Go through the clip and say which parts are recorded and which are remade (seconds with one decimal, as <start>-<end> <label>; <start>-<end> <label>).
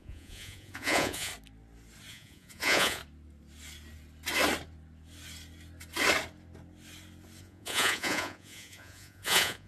0.0-1.3 remade; 1.3-2.1 recorded; 2.1-3.0 remade; 3.0-7.4 recorded; 7.4-9.7 remade